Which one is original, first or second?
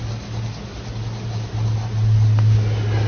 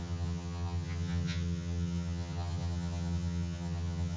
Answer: first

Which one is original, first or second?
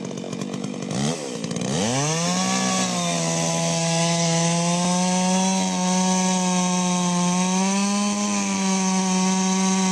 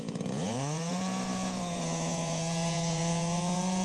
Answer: first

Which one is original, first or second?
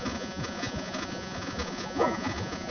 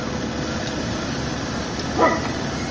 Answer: second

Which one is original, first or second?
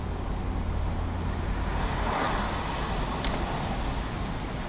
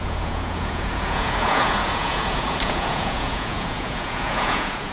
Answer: first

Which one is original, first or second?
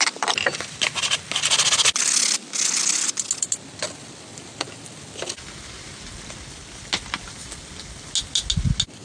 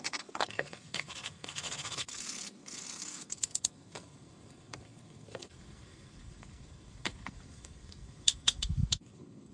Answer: first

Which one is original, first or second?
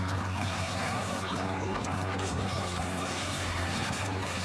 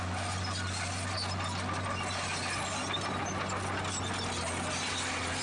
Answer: second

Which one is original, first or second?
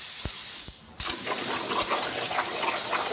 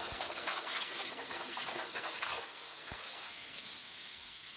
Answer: first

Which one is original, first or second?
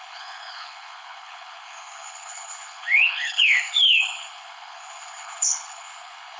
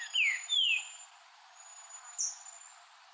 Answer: second